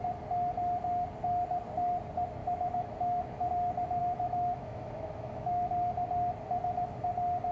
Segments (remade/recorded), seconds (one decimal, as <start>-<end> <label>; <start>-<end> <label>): 0.0-2.4 recorded; 2.4-3.5 remade; 3.5-4.0 recorded; 4.0-5.7 remade; 5.7-7.5 recorded